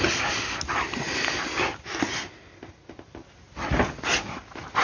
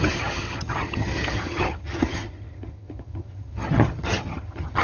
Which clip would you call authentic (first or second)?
first